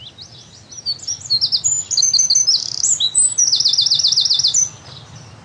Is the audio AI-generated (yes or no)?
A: no